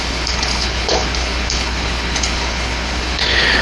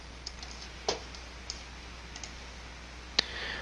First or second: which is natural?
second